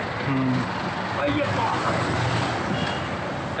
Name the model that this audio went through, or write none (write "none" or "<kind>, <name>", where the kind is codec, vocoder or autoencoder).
none